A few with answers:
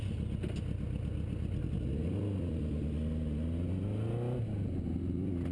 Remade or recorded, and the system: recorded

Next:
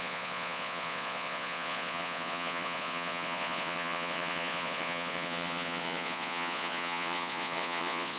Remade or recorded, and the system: remade, vocoder, Vocos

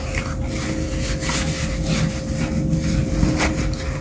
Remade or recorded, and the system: recorded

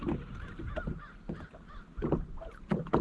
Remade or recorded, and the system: recorded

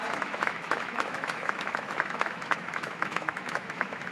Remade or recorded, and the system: remade, autoencoder, DAC-VAE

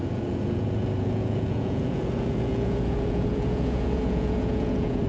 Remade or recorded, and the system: remade, vocoder, Vocos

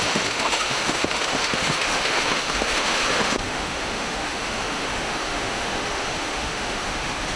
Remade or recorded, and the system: remade, autoencoder, DAC-VAE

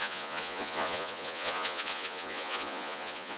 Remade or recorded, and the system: remade, vocoder, Vocos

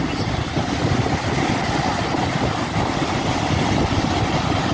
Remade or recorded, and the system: recorded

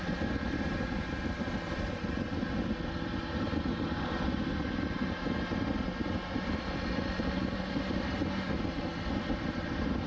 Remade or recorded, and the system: recorded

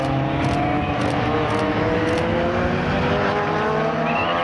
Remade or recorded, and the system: recorded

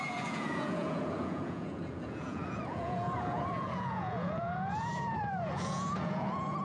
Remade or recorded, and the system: remade, vocoder, Vocos